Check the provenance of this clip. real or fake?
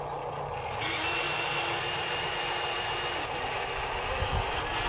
real